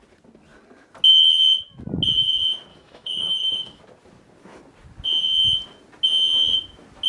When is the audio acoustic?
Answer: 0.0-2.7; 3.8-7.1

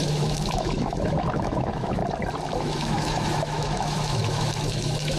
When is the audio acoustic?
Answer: 2.0-2.6

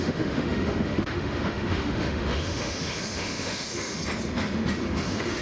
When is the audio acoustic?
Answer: 4.0-4.9

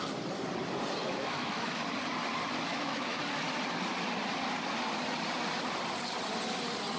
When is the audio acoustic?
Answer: 0.0-1.0; 1.8-2.7; 3.2-7.0